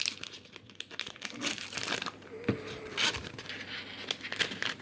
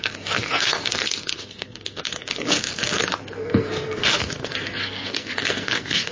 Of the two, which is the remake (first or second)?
second